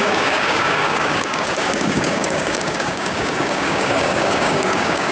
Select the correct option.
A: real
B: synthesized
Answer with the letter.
B